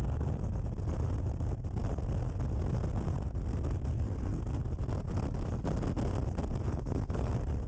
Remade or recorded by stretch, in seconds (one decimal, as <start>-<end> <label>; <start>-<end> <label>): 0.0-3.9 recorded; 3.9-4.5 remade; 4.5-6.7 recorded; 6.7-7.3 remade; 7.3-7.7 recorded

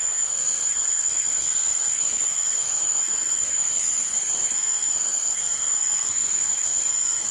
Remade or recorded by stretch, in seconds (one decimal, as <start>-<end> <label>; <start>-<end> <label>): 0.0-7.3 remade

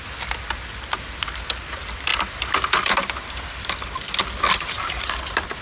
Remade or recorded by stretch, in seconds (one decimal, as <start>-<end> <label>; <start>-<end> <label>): 0.0-5.6 recorded